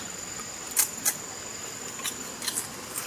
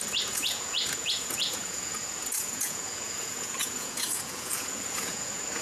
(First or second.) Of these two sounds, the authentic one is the first